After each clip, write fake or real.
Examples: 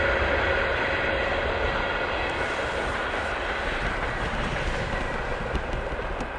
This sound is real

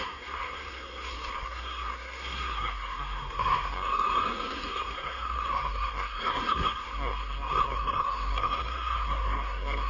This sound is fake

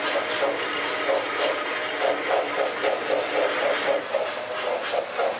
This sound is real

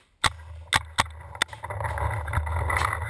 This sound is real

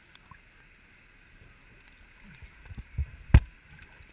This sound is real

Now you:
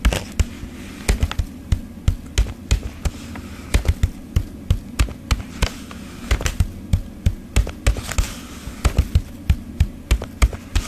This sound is real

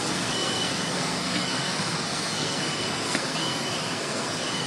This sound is fake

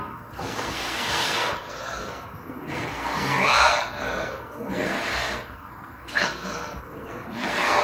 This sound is fake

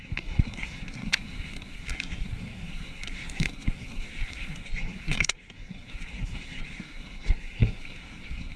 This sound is fake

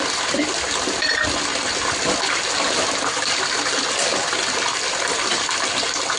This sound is real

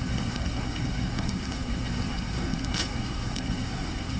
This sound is fake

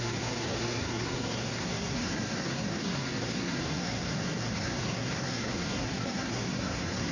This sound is fake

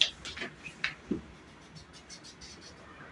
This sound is real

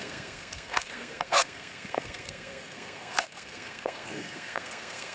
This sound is fake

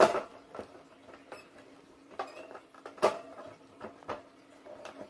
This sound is real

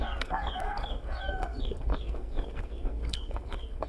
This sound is fake